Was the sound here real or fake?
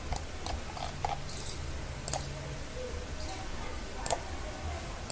real